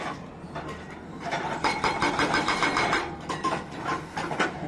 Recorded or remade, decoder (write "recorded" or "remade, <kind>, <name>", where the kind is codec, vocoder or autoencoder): recorded